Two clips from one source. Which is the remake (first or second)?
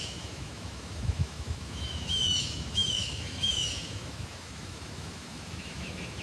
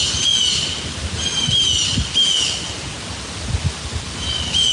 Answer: first